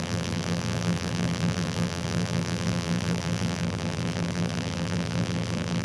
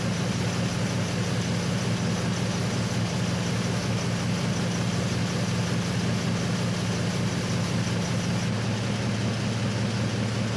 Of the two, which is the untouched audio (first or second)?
second